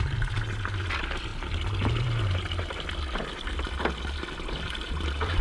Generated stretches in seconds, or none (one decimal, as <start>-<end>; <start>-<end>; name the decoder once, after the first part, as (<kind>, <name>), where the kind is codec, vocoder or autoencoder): none